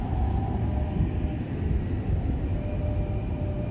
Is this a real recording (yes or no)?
yes